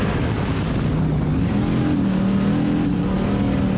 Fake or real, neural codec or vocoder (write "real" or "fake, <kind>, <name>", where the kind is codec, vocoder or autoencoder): real